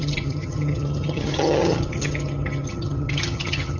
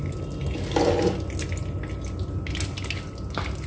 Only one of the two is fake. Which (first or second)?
first